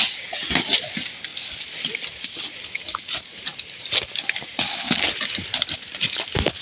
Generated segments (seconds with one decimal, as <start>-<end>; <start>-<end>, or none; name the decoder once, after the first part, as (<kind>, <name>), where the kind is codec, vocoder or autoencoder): none

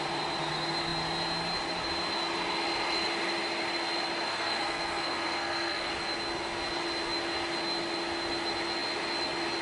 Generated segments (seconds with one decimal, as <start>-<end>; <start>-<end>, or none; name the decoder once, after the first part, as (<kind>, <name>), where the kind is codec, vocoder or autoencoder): 4.3-5.9 (codec, SNAC)